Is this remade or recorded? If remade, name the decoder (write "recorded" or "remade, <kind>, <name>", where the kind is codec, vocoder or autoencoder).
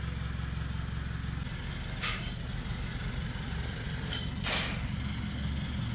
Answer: recorded